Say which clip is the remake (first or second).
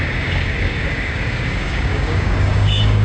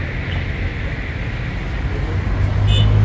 first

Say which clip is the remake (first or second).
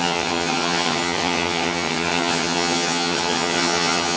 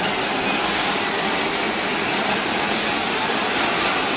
first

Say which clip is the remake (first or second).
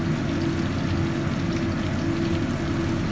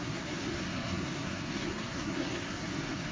second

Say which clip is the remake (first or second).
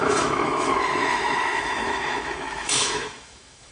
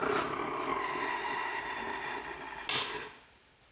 first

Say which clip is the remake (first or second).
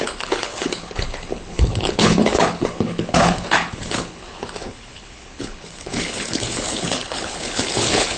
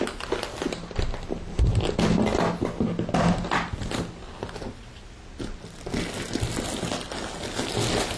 first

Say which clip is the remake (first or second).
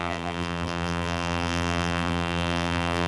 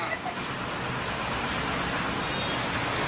first